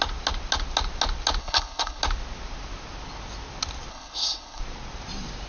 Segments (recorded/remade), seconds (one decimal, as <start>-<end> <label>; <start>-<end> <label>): 0.0-1.4 recorded; 1.4-2.0 remade; 2.0-3.9 recorded; 3.9-4.6 remade; 4.6-5.5 recorded